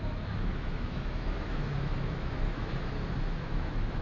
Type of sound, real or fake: fake